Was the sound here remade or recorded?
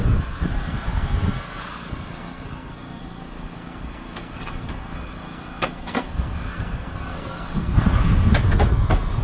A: remade